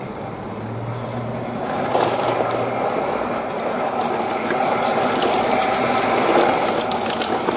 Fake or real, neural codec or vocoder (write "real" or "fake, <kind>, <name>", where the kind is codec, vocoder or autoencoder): real